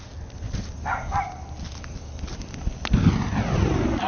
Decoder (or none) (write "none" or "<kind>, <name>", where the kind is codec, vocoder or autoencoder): none